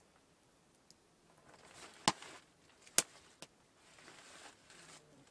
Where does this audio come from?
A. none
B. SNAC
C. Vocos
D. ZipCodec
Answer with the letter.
A